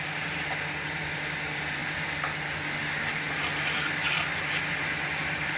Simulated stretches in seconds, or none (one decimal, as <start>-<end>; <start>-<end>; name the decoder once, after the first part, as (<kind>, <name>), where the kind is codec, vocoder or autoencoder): none